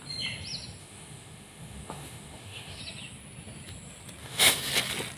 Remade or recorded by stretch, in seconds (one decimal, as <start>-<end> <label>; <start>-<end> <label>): 0.0-0.8 recorded; 0.8-2.8 remade; 2.8-4.2 recorded; 4.2-4.7 remade; 4.7-5.2 recorded